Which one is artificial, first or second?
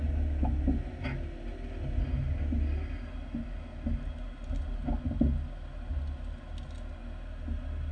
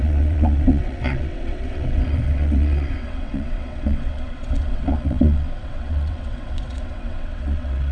second